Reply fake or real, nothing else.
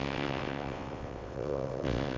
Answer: fake